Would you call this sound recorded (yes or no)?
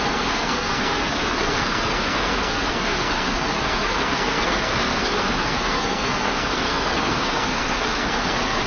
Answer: no